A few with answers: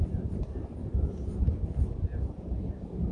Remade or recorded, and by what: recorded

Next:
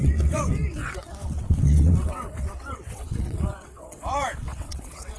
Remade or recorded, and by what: remade, vocoder, WaveNeXt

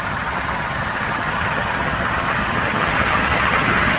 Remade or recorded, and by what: remade, vocoder, HiFi-GAN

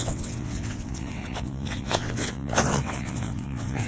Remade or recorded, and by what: remade, vocoder, WaveNeXt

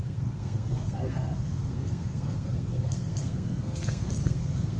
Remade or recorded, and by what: remade, codec, SNAC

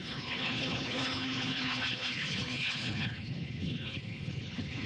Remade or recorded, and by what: remade, codec, HILCodec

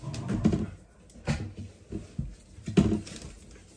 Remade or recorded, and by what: recorded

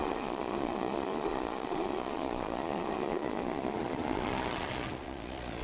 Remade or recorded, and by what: remade, vocoder, Vocos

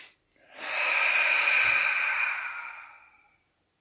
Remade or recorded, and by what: recorded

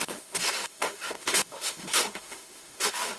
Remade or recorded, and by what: remade, autoencoder, DAC-VAE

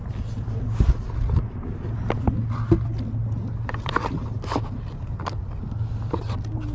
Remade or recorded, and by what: recorded